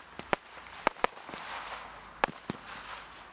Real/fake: real